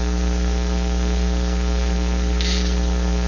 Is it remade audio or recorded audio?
remade